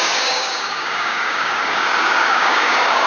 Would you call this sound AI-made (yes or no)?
yes